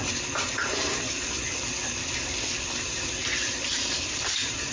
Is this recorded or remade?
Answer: remade